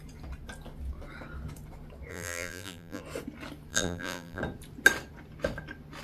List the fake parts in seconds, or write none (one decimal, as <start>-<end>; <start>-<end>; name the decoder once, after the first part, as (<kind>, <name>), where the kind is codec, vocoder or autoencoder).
2.1-3.0 (vocoder, BigVGAN v2); 3.7-4.4